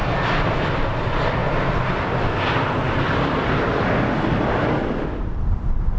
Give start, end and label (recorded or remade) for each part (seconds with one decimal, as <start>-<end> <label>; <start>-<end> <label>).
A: 0.0-6.0 recorded